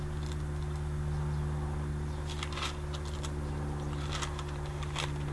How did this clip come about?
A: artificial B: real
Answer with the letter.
B